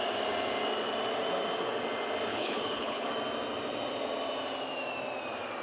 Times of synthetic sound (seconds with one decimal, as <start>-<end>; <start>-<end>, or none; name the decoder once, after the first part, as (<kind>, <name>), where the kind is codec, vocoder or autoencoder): 2.3-3.1 (codec, HILCodec)